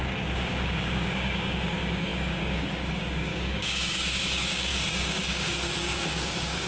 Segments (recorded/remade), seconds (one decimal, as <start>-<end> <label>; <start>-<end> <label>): 0.0-6.7 remade